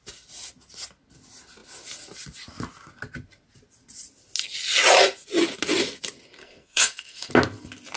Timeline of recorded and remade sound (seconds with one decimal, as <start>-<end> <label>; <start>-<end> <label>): 0.0-6.4 recorded; 6.4-7.3 remade; 7.3-8.0 recorded